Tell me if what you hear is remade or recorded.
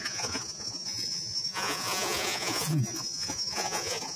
remade